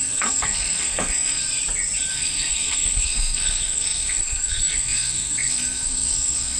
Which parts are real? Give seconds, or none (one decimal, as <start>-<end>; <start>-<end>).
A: 1.4-2.1